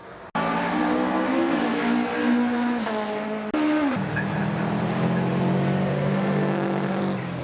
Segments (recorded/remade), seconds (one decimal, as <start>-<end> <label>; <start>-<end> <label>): 0.0-5.9 recorded; 5.9-7.0 remade; 7.0-7.4 recorded